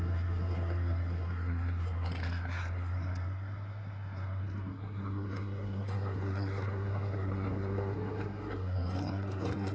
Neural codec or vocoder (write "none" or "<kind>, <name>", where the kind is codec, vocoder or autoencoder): codec, SNAC